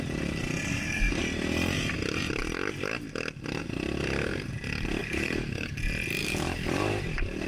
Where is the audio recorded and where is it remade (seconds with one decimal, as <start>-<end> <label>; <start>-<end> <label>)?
0.0-0.7 recorded; 0.7-1.2 remade; 1.2-5.0 recorded; 5.0-5.8 remade; 5.8-6.2 recorded; 6.2-7.5 remade